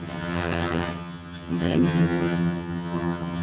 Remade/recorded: remade